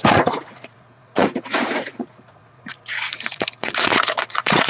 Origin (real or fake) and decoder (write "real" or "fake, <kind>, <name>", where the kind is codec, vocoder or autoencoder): fake, vocoder, Vocos